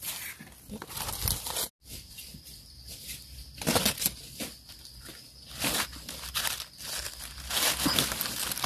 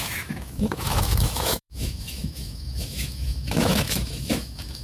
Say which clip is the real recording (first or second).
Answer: first